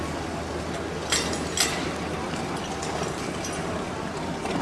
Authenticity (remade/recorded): recorded